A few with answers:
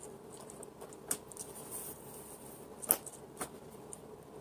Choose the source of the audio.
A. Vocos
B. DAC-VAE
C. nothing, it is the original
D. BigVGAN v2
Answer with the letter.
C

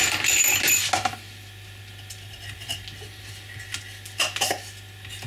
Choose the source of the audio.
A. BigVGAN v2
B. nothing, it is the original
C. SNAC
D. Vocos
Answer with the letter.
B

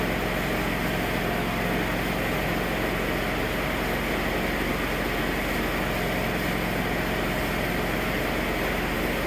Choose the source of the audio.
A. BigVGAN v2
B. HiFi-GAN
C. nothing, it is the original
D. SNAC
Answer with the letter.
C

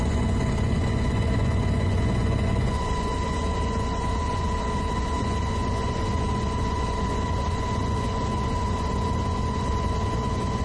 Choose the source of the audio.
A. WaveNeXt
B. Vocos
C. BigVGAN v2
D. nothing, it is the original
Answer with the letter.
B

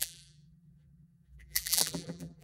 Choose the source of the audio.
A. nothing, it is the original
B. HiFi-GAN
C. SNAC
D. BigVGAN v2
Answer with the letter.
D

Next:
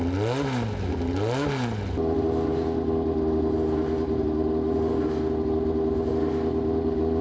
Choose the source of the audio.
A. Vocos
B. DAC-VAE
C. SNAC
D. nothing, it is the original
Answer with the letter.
D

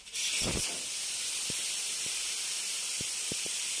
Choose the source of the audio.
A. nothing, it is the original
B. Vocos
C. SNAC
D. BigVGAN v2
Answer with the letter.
A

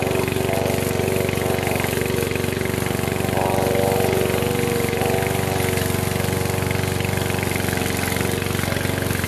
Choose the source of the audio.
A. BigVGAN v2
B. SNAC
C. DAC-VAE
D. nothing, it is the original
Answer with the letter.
D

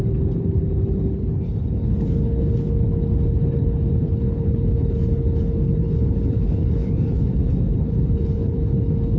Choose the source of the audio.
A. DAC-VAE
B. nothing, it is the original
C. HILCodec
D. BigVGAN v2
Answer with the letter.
C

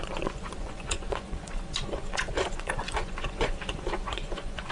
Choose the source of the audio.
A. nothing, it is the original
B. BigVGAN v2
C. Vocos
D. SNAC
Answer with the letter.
C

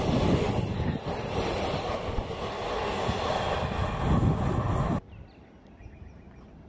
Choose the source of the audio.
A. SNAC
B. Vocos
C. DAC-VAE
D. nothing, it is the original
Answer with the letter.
D